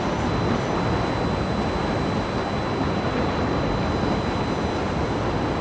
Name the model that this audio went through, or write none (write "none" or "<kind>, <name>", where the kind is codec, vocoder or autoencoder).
none